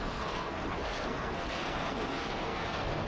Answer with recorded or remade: remade